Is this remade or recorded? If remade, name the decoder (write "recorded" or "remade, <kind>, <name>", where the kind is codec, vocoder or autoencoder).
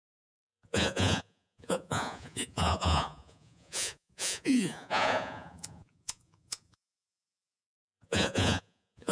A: remade, vocoder, Vocos